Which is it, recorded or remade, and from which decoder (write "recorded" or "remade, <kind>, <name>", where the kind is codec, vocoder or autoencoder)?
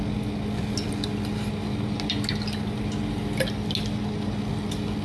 recorded